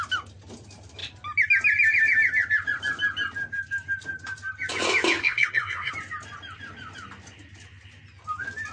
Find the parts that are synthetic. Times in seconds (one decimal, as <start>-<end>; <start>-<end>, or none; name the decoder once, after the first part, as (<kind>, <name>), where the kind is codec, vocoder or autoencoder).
5.2-5.9 (codec, SNAC)